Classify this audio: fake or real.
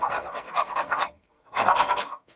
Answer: fake